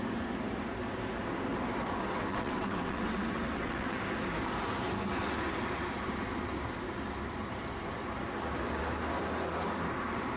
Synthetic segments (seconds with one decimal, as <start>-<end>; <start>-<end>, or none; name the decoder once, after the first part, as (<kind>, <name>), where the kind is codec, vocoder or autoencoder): 2.3-4.0 (vocoder, WaveNeXt)